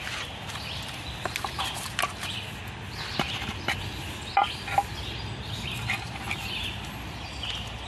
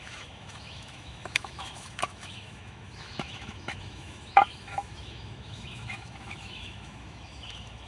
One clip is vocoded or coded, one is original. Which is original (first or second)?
first